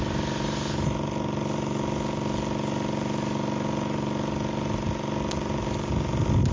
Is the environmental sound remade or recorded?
recorded